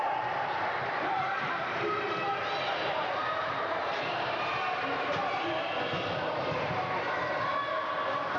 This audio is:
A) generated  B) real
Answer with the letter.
B